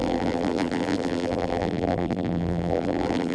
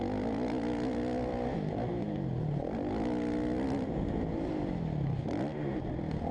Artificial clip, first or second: first